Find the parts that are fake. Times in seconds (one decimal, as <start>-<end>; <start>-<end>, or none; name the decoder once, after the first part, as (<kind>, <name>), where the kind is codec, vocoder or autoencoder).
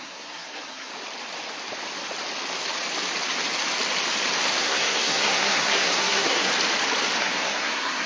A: 0.0-0.9 (codec, SNAC); 4.6-6.5; 7.2-8.1